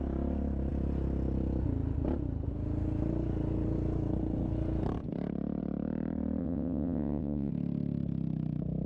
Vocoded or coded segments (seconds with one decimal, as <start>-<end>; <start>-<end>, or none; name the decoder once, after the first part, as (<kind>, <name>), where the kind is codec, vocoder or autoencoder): 6.4-7.5 (vocoder, WaveNeXt)